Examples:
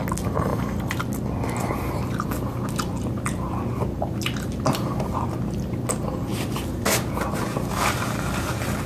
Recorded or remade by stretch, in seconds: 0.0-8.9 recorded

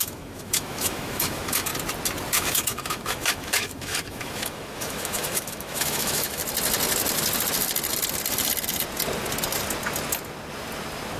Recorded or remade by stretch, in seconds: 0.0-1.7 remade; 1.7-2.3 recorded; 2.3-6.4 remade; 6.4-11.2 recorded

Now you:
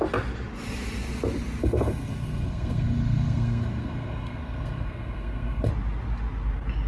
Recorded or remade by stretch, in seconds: 0.0-1.6 recorded; 1.6-5.7 remade; 5.7-6.9 recorded